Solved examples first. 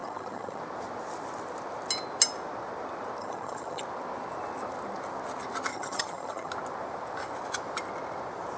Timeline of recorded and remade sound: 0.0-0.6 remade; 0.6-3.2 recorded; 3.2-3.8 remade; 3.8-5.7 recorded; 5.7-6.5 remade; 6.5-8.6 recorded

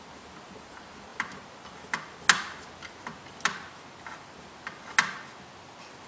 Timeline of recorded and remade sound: 0.0-6.1 recorded

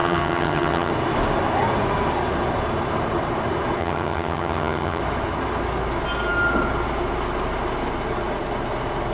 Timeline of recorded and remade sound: 0.0-0.9 remade; 0.9-3.8 recorded; 3.8-5.0 remade; 5.0-9.1 recorded